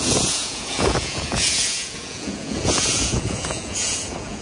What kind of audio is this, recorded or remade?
remade